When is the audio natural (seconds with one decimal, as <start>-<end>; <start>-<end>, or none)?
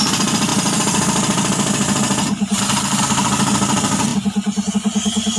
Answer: 0.0-5.4